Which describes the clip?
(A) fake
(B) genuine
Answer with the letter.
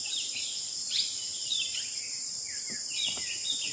B